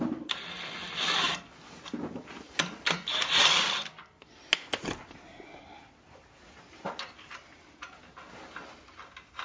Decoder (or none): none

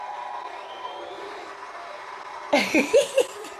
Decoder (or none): none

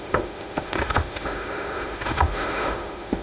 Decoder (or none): autoencoder, DAC-VAE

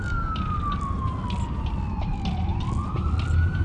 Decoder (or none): none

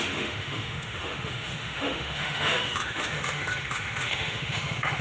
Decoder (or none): autoencoder, DAC-VAE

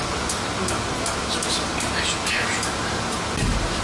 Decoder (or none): none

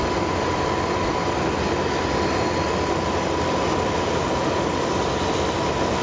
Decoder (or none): none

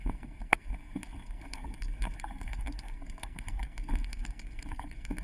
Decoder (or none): codec, SNAC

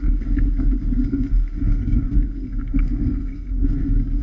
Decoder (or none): codec, SNAC